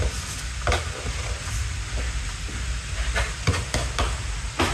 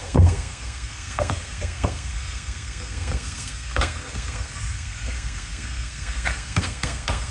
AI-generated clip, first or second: second